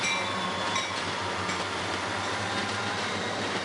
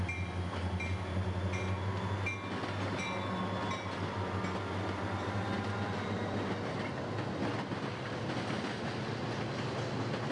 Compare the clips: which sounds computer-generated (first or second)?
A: first